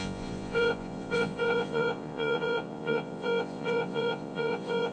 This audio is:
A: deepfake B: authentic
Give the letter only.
A